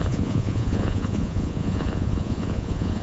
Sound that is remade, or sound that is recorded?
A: remade